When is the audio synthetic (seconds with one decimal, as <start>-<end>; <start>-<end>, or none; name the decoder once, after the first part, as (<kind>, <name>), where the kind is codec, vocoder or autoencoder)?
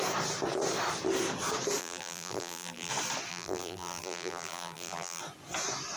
1.8-2.9 (vocoder, BigVGAN v2); 3.3-5.2